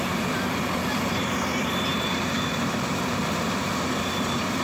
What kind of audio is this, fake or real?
fake